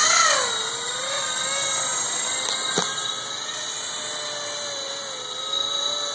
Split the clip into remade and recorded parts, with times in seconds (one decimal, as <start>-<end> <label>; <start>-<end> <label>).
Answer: 0.0-6.1 recorded

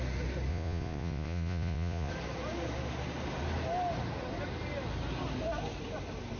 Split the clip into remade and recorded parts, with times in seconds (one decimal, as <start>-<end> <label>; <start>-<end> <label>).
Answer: 0.0-0.5 recorded; 0.5-2.1 remade; 2.1-6.4 recorded

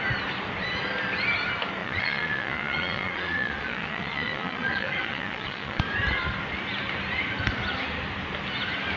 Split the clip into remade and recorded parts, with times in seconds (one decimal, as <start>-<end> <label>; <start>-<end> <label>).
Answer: 0.0-1.8 recorded; 1.8-5.8 remade; 5.8-9.0 recorded

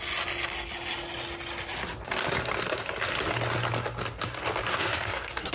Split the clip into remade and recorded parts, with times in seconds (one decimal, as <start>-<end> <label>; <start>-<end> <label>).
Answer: 0.0-4.7 recorded; 4.7-5.5 remade

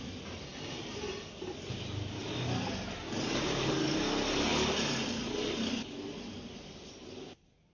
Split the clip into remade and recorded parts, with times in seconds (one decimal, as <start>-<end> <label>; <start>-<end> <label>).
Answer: 0.0-7.7 recorded

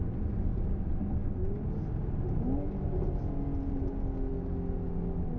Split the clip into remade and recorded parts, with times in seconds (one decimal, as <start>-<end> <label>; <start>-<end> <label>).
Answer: 0.0-5.4 recorded